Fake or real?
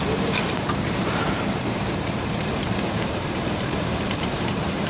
fake